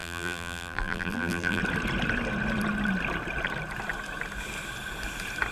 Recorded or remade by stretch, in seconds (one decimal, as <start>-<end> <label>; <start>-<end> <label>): 0.0-1.6 remade; 1.6-5.5 recorded